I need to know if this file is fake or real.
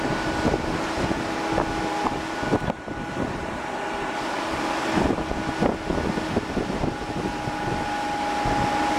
real